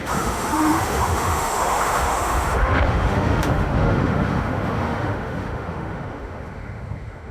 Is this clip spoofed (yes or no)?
yes